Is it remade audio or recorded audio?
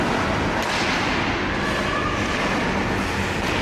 recorded